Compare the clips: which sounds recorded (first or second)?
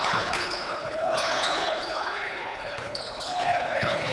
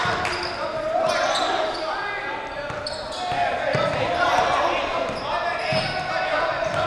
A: second